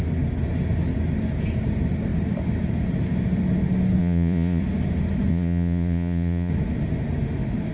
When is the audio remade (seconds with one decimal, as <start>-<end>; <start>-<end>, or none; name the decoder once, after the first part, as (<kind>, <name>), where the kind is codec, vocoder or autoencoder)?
4.0-4.6 (vocoder, Vocos); 5.3-6.5